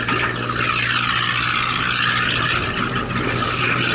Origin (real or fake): real